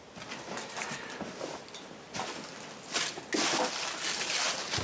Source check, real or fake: real